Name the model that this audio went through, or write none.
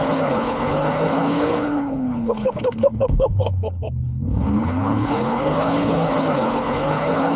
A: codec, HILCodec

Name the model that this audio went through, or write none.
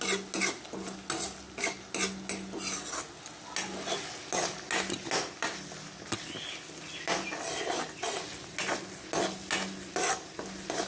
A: none